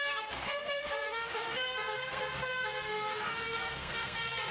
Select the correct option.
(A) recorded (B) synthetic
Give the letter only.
B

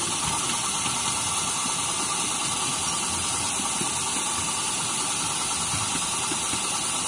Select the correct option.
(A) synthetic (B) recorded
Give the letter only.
B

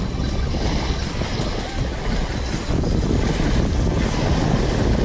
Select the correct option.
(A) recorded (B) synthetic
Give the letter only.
A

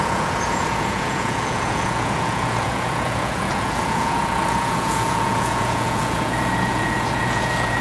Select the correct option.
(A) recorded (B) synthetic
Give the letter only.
B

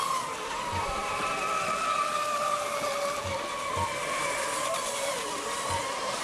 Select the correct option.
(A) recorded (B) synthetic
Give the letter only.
B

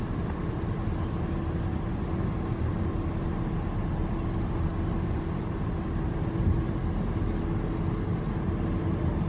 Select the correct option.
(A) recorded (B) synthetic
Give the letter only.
A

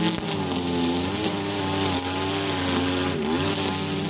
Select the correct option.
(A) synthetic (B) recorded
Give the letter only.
B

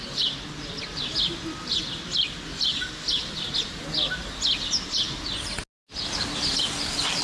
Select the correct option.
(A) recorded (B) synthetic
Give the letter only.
A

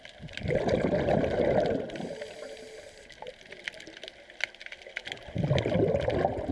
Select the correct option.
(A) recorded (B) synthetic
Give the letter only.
A